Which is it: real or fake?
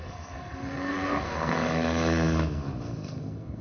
fake